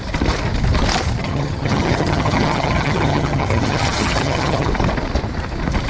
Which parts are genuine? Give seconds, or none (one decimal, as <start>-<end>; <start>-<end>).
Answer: 0.0-1.2; 4.7-5.9